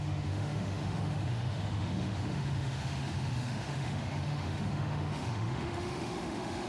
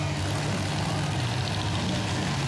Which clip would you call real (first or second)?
second